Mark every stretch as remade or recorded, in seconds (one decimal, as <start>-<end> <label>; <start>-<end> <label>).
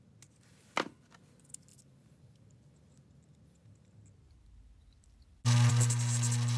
0.0-6.6 recorded